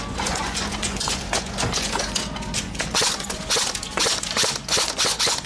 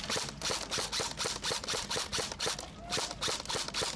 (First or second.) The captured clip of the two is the second